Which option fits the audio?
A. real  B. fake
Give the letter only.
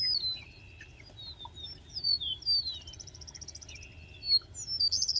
A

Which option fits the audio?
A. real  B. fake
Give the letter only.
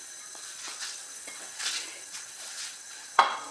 B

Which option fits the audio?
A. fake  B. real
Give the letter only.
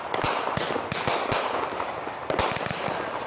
B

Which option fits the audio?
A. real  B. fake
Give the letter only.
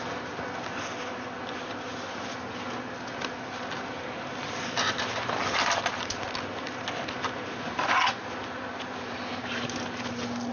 A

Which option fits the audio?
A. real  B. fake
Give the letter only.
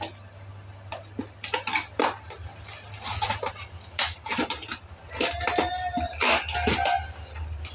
A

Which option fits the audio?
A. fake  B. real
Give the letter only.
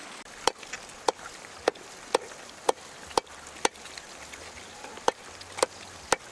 B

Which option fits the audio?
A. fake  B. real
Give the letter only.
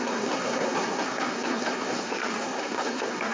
A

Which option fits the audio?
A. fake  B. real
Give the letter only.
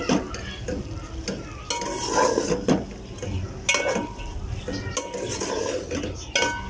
B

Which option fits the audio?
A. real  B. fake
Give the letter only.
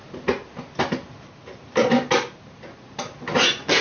A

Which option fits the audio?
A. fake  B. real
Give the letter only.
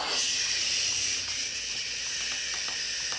B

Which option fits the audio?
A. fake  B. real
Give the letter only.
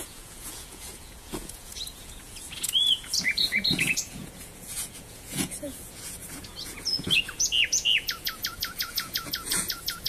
A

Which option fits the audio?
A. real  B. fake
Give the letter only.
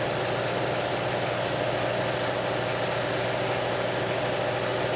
A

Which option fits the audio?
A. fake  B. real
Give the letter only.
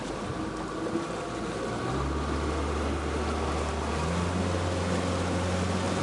B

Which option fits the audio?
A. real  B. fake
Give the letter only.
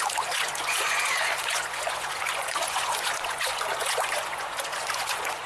B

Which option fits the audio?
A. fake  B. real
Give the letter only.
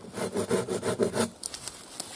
B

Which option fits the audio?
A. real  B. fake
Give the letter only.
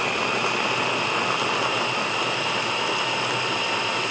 A